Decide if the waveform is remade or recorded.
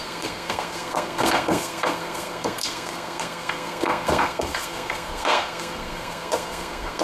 remade